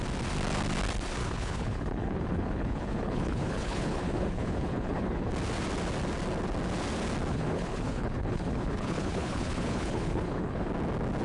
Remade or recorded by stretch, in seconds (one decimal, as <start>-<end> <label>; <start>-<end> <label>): 0.0-1.2 recorded; 1.2-5.3 remade; 5.3-7.3 recorded; 7.3-10.7 remade; 10.7-11.2 recorded